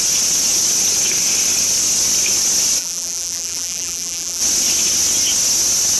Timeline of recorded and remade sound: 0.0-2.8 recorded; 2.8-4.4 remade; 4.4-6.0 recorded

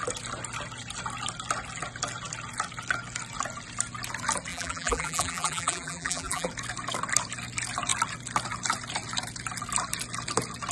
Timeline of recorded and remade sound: 0.0-4.5 recorded; 4.5-6.5 remade; 6.5-10.7 recorded

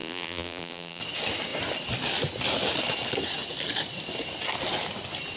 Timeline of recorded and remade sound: 0.0-1.0 remade; 1.0-5.4 recorded

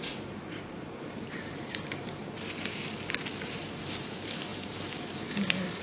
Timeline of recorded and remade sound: 0.0-2.2 remade; 2.2-3.6 recorded; 3.6-5.8 remade

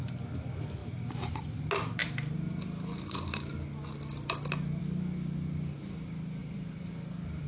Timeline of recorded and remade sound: 0.0-6.4 recorded; 6.4-7.5 remade